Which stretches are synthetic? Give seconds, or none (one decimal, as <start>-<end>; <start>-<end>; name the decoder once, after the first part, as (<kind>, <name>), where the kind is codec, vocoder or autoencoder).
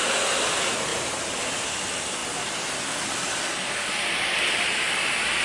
none